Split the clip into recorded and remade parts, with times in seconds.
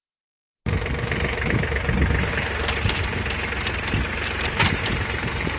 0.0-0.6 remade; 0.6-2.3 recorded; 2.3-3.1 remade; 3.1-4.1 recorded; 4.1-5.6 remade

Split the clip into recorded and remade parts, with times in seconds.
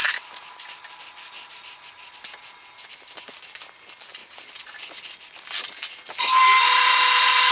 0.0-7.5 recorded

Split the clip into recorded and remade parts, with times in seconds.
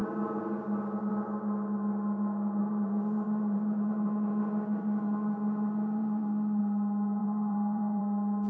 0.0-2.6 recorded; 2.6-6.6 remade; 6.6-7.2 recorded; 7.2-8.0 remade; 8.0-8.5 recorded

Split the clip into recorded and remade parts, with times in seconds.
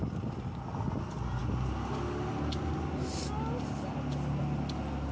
0.0-5.1 recorded